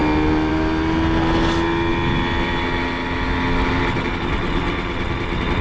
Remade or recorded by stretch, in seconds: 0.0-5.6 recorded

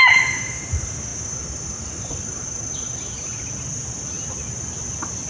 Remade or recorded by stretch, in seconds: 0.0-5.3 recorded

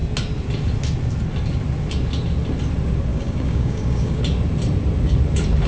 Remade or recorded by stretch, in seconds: 0.0-3.1 recorded; 3.1-4.2 remade; 4.2-5.7 recorded